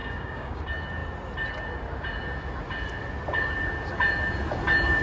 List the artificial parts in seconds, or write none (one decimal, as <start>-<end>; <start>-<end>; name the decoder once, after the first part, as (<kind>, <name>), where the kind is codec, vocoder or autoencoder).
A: 0.0-0.6 (codec, DAC)